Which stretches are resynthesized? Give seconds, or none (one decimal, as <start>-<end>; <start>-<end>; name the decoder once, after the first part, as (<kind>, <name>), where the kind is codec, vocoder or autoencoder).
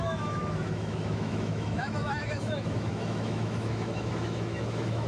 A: 0.0-5.1 (autoencoder, DAC-VAE)